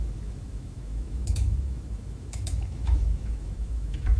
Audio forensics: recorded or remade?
remade